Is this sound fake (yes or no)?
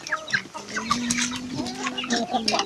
no